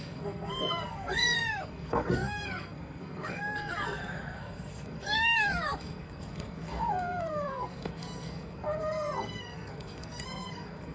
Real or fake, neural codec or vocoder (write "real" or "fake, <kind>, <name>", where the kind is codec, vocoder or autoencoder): fake, codec, SNAC